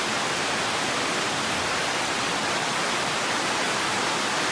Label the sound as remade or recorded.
recorded